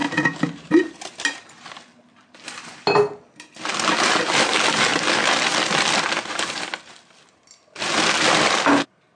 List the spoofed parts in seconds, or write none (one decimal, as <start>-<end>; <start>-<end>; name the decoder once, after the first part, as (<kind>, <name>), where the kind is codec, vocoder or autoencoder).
none